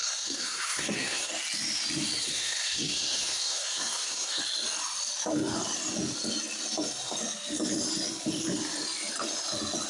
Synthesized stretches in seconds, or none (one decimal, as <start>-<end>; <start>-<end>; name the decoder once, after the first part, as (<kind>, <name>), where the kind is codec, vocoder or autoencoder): 0.0-1.3 (codec, SNAC); 2.2-4.4